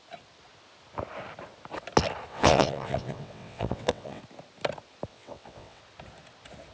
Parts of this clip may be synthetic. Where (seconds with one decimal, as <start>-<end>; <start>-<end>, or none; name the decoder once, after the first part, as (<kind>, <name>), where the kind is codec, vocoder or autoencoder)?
2.3-4.2 (vocoder, WaveNeXt); 5.1-5.8